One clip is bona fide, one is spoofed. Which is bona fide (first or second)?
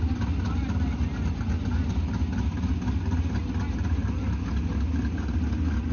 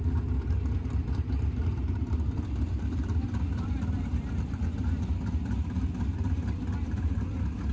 first